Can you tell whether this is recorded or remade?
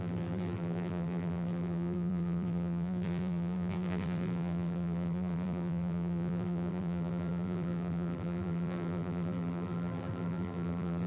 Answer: remade